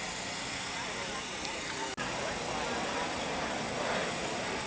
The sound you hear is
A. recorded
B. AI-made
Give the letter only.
A